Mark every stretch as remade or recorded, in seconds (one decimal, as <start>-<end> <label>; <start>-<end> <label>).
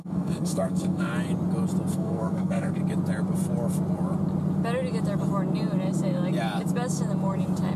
0.0-1.1 remade; 1.1-1.9 recorded; 1.9-2.8 remade; 2.8-7.8 recorded